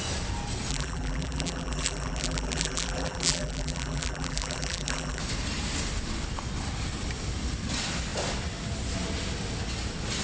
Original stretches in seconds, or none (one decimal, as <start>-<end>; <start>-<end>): 0.0-0.7; 5.2-10.2